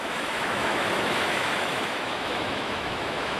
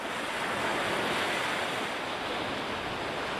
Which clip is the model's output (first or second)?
first